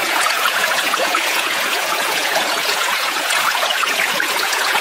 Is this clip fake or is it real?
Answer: fake